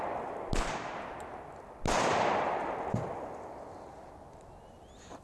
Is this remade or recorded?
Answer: recorded